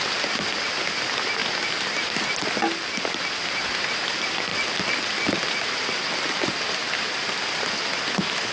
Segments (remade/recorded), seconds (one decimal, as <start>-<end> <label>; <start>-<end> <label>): 0.0-8.5 recorded